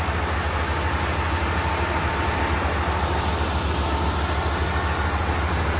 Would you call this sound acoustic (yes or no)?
yes